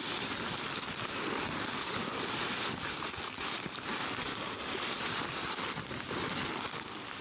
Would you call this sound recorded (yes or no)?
yes